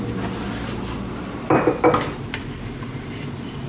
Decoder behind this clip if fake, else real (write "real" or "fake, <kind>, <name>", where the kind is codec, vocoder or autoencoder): real